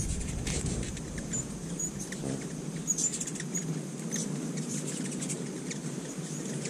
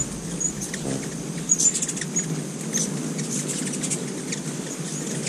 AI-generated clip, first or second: first